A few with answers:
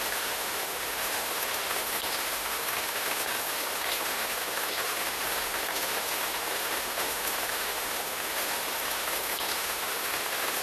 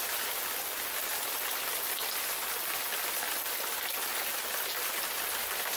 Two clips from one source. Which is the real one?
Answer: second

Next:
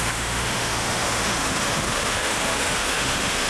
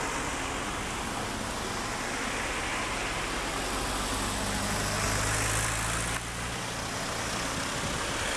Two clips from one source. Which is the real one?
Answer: second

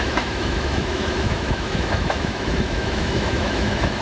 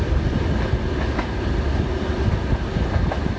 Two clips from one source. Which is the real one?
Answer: second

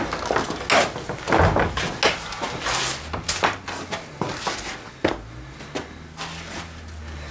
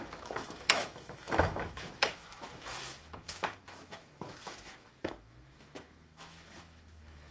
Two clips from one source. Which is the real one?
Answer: first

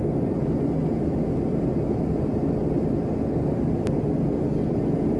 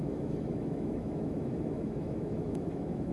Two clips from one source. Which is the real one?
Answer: first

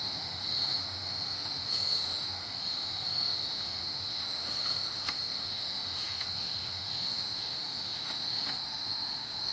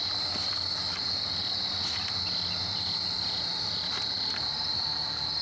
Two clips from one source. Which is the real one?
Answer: second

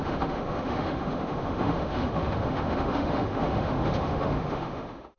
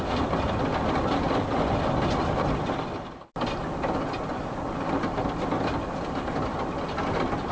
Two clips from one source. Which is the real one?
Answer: second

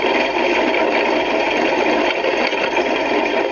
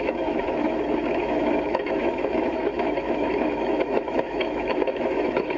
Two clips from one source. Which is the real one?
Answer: first